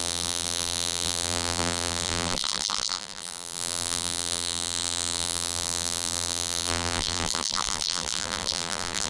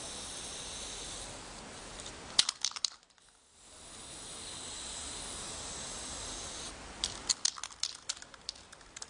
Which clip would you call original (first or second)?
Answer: second